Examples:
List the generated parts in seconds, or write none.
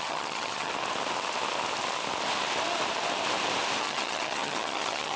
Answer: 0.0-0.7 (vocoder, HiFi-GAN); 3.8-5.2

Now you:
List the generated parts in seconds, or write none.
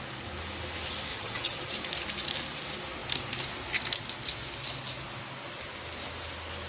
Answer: 1.1-1.7 (vocoder, HiFi-GAN)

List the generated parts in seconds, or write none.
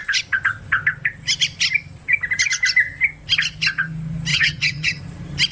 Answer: 4.3-5.0 (vocoder, HiFi-GAN)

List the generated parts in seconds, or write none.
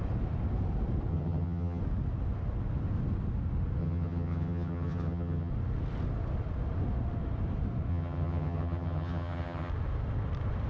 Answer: 1.1-1.8 (vocoder, HiFi-GAN); 3.8-5.5; 7.9-9.7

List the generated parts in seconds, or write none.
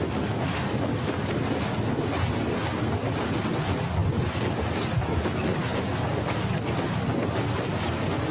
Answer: none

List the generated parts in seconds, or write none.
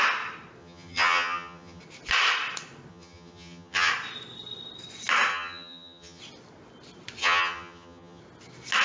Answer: 0.6-1.8 (vocoder, HiFi-GAN); 2.9-3.9; 5.3-6.2; 7.2-8.2